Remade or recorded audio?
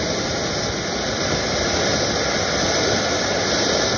recorded